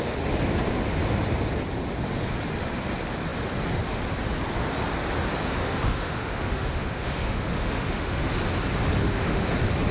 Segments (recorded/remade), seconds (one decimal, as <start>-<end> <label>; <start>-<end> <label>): 0.0-5.6 recorded; 5.6-8.3 remade; 8.3-9.0 recorded; 9.0-9.5 remade; 9.5-9.9 recorded